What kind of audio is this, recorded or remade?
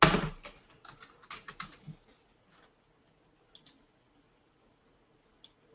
recorded